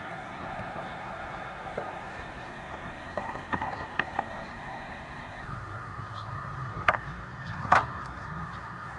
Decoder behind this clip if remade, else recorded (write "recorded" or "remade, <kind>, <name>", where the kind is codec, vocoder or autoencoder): remade, codec, SNAC